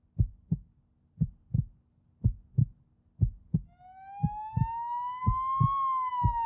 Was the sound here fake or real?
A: real